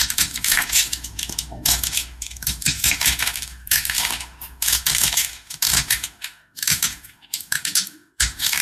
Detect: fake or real fake